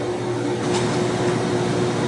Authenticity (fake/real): real